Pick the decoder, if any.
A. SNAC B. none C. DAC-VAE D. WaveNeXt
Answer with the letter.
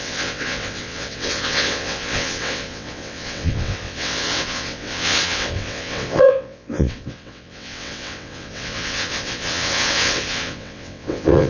D